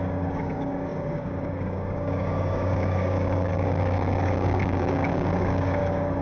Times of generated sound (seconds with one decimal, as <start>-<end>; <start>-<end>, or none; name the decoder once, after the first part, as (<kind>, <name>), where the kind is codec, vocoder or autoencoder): 0.0-6.2 (codec, DAC)